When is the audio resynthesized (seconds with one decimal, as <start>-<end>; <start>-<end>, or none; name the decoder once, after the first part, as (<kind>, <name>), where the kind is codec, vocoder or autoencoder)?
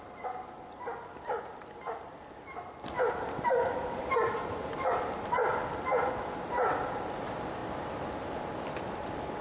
none